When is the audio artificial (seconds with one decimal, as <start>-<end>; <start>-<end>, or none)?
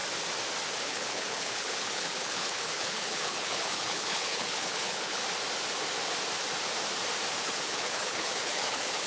0.8-5.2; 7.4-9.1